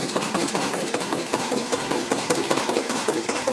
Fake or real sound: fake